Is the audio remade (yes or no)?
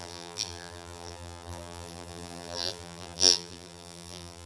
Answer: yes